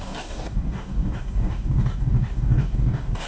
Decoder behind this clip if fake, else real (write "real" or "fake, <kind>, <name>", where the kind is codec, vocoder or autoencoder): fake, codec, DAC